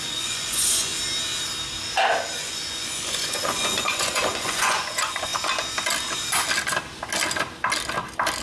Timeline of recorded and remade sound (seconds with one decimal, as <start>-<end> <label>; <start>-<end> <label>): 0.0-0.9 remade; 0.9-2.4 recorded; 2.4-5.3 remade; 5.3-8.4 recorded